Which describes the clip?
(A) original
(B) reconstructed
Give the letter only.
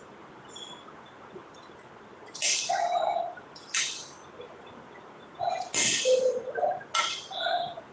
A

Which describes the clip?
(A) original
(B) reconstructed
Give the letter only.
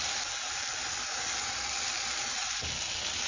A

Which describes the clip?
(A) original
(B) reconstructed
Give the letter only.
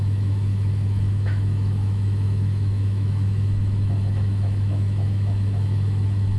B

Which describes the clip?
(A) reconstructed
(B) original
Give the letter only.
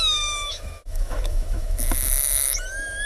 A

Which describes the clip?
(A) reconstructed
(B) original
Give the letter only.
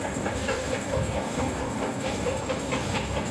A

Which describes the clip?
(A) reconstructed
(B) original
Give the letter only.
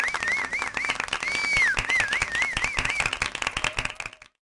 B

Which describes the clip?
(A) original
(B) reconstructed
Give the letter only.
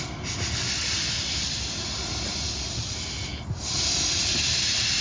A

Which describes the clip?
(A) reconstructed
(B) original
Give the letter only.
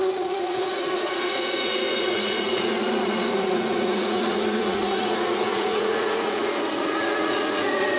A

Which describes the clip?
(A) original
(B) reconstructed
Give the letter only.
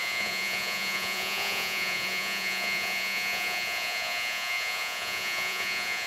B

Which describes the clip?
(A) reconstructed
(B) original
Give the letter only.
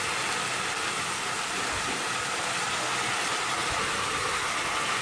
B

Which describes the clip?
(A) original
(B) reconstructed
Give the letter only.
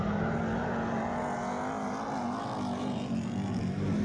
A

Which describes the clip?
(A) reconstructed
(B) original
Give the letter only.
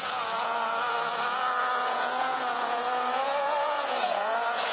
A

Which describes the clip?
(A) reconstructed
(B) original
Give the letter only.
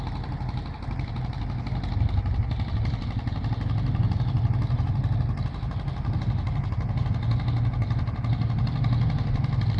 B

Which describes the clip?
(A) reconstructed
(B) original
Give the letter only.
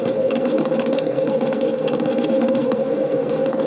A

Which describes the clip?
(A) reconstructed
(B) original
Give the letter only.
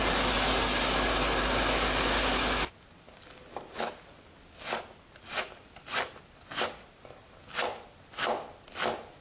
B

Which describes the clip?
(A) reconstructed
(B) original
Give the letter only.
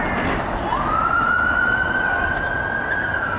B